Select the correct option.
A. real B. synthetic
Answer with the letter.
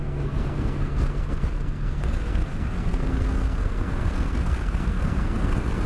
B